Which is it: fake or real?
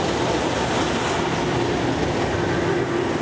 real